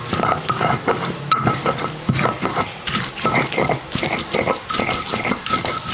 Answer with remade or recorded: recorded